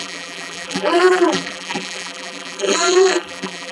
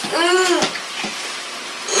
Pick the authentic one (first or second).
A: second